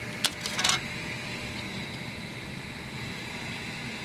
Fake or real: real